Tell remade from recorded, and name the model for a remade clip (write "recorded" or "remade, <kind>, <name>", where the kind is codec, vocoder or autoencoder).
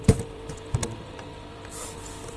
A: remade, vocoder, BigVGAN v2